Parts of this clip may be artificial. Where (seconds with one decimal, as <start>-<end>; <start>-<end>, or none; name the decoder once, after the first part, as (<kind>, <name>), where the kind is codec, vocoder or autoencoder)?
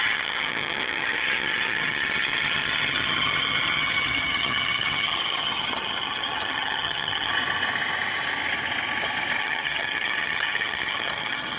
0.0-7.3 (vocoder, HiFi-GAN); 9.4-11.6